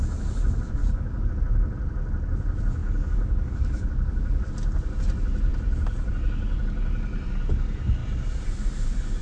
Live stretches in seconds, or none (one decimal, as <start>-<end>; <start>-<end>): 0.0-0.8; 1.3-2.8; 4.5-9.2